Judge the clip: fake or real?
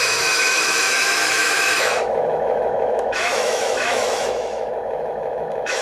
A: fake